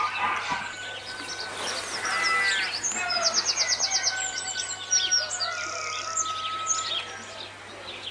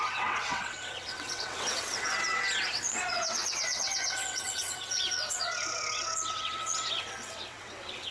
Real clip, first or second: first